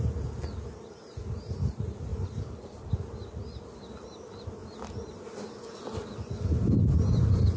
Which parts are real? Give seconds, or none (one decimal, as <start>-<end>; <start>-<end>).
0.0-2.1; 2.9-7.6